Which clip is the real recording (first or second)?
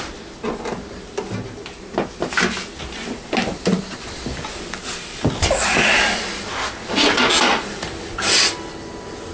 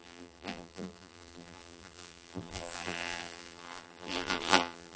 first